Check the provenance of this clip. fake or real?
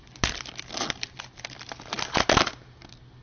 real